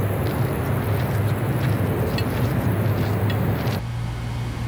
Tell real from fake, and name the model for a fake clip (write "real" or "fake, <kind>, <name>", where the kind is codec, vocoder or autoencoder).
real